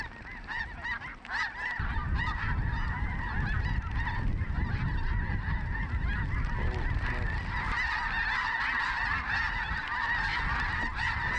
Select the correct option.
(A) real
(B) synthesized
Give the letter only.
A